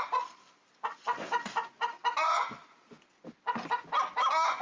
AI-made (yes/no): no